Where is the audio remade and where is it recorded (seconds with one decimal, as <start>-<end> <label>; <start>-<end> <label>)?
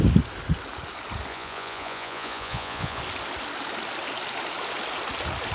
0.0-1.3 recorded; 1.3-3.0 remade; 3.0-5.5 recorded